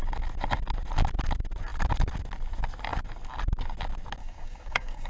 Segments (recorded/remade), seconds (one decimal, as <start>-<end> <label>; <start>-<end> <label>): 0.0-4.2 recorded; 4.2-5.1 remade